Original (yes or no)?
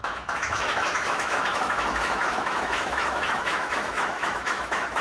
no